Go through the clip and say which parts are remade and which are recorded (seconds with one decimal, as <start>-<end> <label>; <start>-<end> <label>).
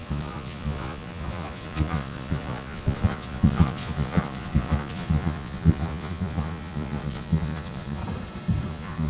0.0-8.0 remade; 8.0-8.7 recorded; 8.7-9.1 remade